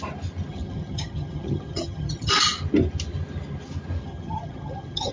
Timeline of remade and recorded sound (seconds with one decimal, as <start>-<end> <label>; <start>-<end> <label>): 0.0-0.5 recorded; 0.5-2.3 remade; 2.3-4.0 recorded; 4.0-5.1 remade